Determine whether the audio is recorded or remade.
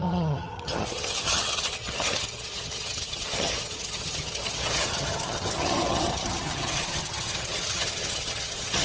remade